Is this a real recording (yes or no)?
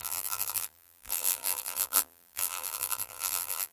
no